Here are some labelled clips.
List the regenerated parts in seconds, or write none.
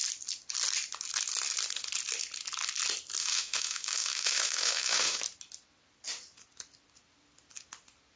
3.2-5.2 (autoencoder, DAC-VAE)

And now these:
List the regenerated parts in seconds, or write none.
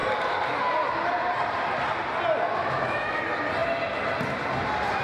2.6-3.2 (autoencoder, DAC-VAE)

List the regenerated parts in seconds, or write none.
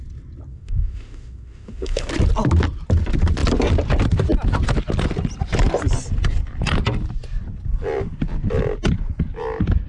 0.5-2.1 (autoencoder, DAC-VAE)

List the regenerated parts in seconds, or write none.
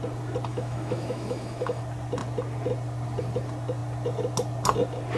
0.5-1.8 (autoencoder, DAC-VAE)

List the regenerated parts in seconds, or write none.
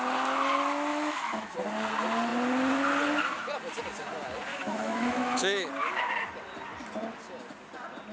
0.9-1.5 (autoencoder, DAC-VAE); 4.5-5.7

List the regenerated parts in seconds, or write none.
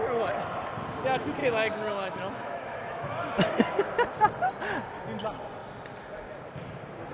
1.4-3.3 (autoencoder, DAC-VAE)